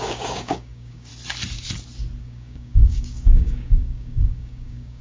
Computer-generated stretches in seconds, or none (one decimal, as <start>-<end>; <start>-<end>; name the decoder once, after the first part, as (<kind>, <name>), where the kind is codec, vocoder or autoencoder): 0.0-1.1 (codec, DAC); 2.2-5.0